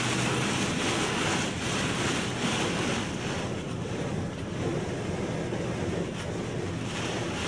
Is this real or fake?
real